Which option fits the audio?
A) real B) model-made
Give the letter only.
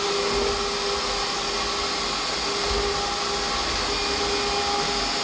A